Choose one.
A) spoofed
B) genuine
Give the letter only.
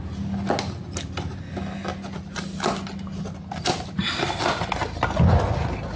B